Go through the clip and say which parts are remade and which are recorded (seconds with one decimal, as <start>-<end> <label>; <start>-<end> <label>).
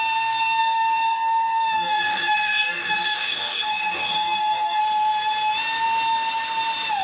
0.0-0.6 recorded; 0.6-4.8 remade; 4.8-7.0 recorded